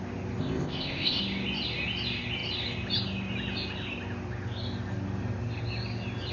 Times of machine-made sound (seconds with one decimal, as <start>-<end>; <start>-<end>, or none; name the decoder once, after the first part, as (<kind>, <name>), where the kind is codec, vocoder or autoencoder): 0.4-1.2 (codec, ZipCodec)